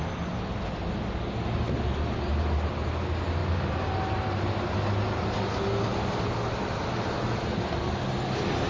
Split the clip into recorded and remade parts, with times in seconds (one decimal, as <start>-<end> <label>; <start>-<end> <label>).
0.0-8.7 recorded